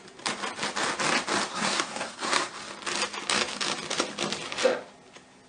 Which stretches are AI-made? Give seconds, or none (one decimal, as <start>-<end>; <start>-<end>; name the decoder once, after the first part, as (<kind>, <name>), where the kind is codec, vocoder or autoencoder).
1.5-2.5 (codec, SNAC)